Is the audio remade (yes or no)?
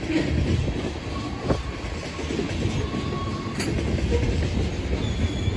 no